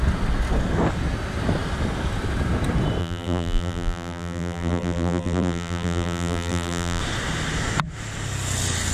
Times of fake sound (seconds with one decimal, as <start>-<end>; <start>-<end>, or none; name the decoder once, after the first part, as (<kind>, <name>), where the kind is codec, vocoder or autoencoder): 3.0-7.0 (vocoder, BigVGAN v2)

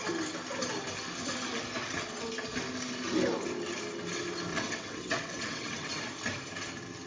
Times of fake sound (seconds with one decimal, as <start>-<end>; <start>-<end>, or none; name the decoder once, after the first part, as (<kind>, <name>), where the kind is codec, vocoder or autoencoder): 4.5-6.0 (vocoder, WaveNeXt)

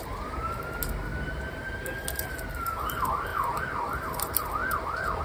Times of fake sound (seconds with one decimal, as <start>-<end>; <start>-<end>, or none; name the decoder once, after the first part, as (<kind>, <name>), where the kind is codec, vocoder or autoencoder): none